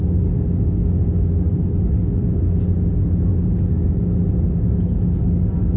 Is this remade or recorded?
recorded